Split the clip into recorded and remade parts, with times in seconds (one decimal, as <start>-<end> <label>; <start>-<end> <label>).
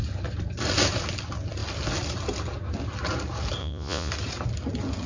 0.0-3.6 recorded; 3.6-4.1 remade; 4.1-5.1 recorded